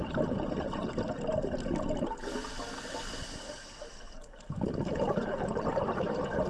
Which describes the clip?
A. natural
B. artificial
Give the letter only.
A